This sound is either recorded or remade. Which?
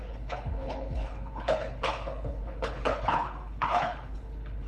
remade